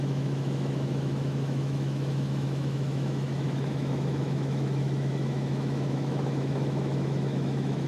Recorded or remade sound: remade